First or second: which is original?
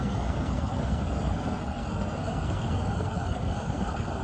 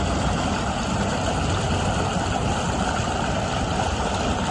second